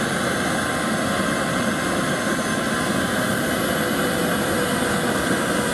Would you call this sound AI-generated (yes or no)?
no